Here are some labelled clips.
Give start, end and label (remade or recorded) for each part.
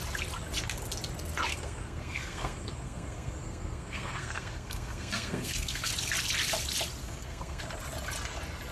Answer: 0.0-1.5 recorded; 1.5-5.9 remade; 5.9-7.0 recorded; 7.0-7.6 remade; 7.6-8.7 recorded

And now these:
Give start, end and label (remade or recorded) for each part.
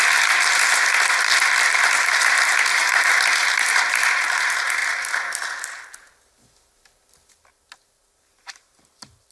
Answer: 0.0-4.8 remade; 4.8-8.0 recorded; 8.0-9.3 remade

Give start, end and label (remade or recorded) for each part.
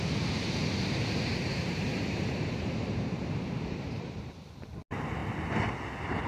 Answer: 0.0-1.5 recorded; 1.5-4.2 remade; 4.2-6.3 recorded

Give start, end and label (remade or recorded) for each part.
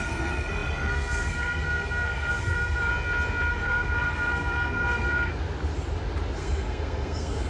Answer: 0.0-2.9 remade; 2.9-3.5 recorded; 3.5-5.3 remade; 5.3-6.4 recorded; 6.4-7.5 remade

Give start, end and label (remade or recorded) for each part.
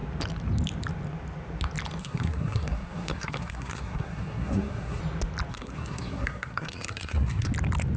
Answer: 0.0-2.0 recorded; 2.0-5.0 remade; 5.0-5.5 recorded; 5.5-7.5 remade; 7.5-8.0 recorded